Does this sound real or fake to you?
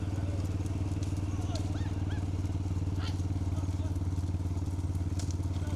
real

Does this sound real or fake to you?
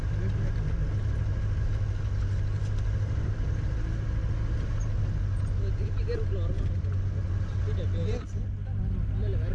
real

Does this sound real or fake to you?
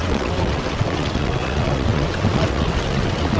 fake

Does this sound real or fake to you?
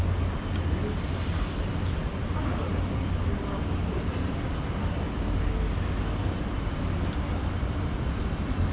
real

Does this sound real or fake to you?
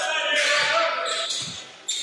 real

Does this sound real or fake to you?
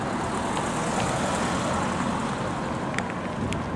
real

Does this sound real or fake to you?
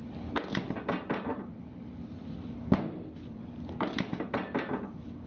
real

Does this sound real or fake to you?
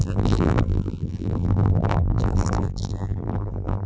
fake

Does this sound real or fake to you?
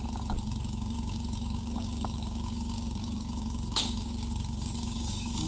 fake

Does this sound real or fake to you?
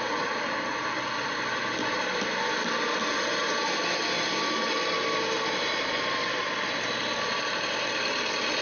real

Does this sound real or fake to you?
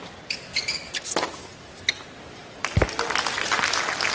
real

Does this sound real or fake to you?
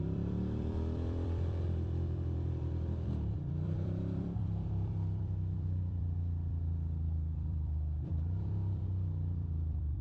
fake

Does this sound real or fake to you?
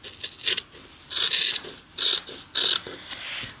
real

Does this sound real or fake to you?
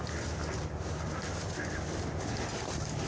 real